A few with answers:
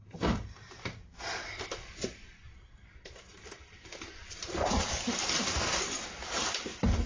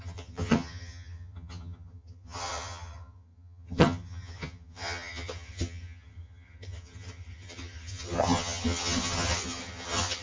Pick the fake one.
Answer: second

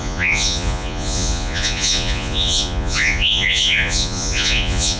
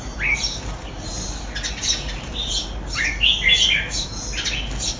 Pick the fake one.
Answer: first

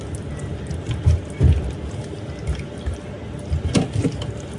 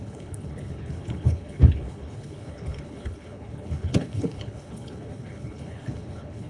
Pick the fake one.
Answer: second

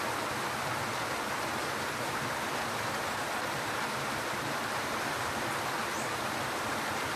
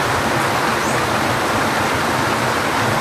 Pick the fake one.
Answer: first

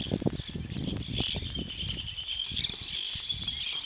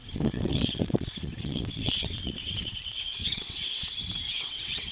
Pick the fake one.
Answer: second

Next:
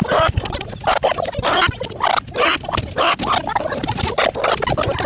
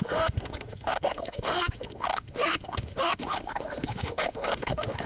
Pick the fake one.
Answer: second